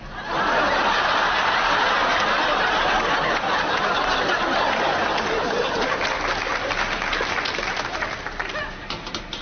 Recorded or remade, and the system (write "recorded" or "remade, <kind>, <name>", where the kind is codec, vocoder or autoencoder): recorded